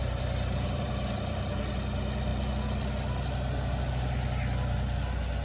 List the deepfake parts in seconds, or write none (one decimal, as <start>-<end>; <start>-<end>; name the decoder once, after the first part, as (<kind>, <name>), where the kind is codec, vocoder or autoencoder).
0.0-1.6 (vocoder, BigVGAN v2)